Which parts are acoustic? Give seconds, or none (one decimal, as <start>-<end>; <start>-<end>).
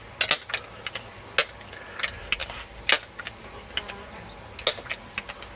0.0-5.6